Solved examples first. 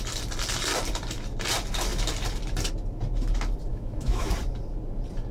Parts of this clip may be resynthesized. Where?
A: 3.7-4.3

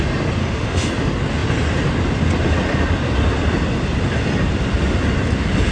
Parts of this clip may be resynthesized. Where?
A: 0.4-0.9

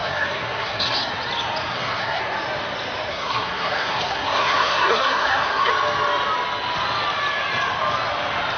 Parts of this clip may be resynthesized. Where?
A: 0.0-1.1; 1.7-2.2; 3.1-5.7

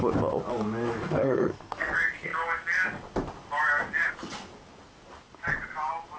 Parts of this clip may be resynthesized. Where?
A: 0.9-1.9